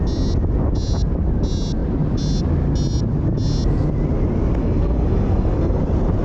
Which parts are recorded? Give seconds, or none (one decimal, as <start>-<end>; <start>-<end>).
0.0-4.6; 5.8-6.2